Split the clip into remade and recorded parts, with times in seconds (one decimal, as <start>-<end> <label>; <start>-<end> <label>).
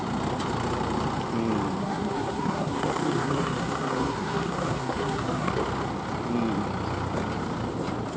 0.0-1.8 recorded; 1.8-5.5 remade; 5.5-8.2 recorded